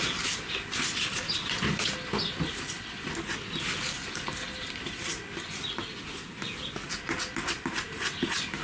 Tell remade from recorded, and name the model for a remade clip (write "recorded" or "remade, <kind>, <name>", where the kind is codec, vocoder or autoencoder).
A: recorded